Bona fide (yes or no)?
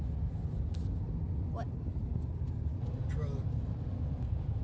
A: yes